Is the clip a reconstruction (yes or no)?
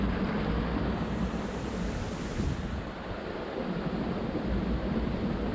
no